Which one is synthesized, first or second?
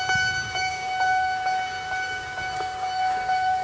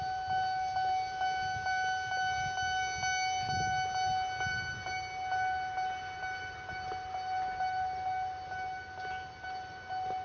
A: first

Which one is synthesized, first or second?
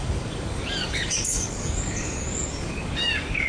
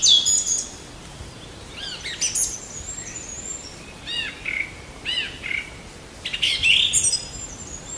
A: first